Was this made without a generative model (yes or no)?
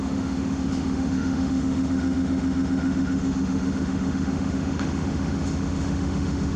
no